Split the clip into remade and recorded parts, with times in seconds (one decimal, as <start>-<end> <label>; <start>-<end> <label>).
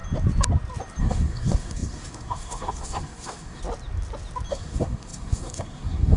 0.0-1.0 recorded; 1.0-3.6 remade; 3.6-4.5 recorded; 4.5-6.2 remade